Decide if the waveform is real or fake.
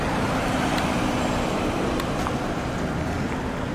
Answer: fake